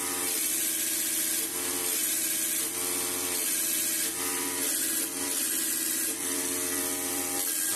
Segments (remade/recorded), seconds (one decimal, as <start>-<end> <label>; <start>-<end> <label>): 0.0-7.8 recorded